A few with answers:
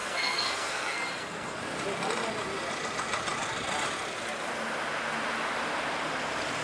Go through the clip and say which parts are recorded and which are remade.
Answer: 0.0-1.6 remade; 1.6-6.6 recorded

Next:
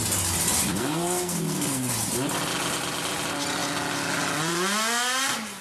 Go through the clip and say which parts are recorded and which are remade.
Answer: 0.0-0.7 recorded; 0.7-1.9 remade; 1.9-5.6 recorded

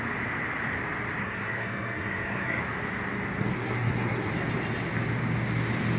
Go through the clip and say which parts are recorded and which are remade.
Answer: 0.0-1.2 recorded; 1.2-2.6 remade; 2.6-3.4 recorded; 3.4-4.3 remade; 4.3-6.0 recorded

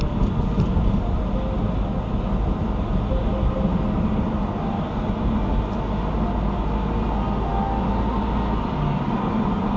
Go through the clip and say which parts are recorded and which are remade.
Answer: 0.0-9.8 recorded

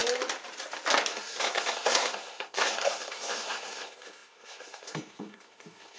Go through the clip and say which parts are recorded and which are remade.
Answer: 0.0-1.1 recorded; 1.1-6.0 remade

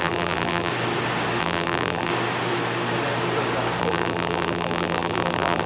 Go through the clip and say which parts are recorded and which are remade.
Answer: 0.0-0.7 remade; 0.7-1.4 recorded; 1.4-2.1 remade; 2.1-3.8 recorded; 3.8-5.7 remade

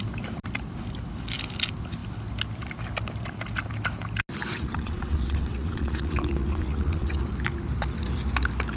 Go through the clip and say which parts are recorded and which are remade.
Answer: 0.0-4.5 recorded; 4.5-7.2 remade; 7.2-8.8 recorded

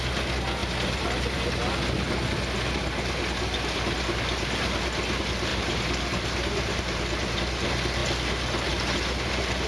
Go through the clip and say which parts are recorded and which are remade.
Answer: 0.0-0.6 recorded; 0.6-1.4 remade; 1.4-5.5 recorded; 5.5-7.4 remade; 7.4-9.7 recorded